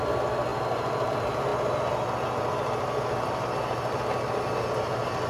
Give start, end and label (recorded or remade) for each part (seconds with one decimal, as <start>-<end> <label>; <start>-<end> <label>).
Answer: 0.0-5.3 recorded